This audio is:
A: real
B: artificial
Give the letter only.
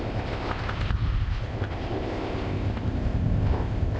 B